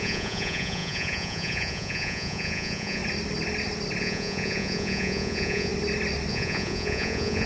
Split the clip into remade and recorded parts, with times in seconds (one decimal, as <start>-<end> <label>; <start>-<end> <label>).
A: 0.0-3.0 remade; 3.0-4.0 recorded; 4.0-5.7 remade; 5.7-6.3 recorded; 6.3-7.5 remade